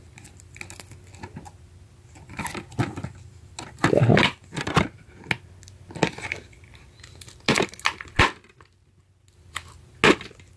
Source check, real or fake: real